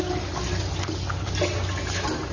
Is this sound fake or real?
real